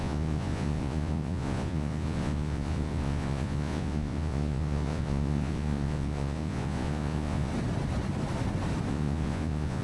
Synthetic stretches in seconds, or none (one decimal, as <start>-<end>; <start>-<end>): 0.0-7.5; 8.9-9.8